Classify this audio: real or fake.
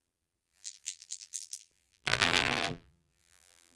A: fake